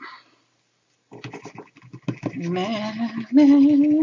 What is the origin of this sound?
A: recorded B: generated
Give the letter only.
A